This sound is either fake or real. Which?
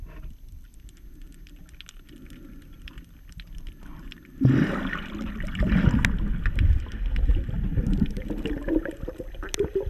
real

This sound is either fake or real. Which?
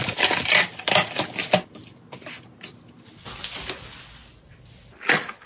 real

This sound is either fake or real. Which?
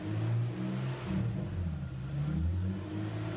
real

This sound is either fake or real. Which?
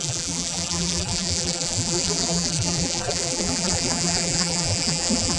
fake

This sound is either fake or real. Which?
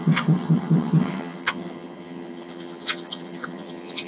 fake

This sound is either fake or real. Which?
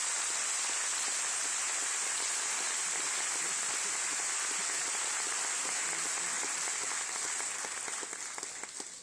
real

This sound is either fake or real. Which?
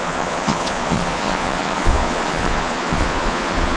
fake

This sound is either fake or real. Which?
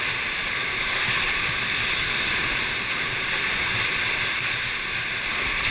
real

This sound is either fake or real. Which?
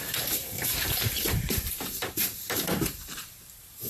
fake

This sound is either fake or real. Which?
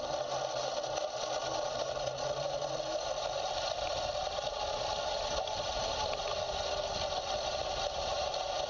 real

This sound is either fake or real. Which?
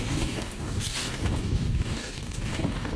fake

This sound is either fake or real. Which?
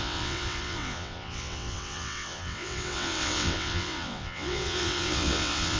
fake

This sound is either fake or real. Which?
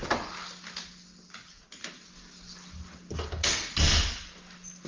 real